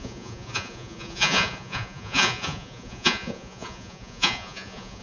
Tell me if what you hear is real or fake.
fake